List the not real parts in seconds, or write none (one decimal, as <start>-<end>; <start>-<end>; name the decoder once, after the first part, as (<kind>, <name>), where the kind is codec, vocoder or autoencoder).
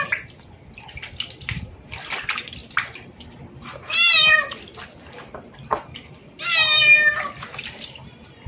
none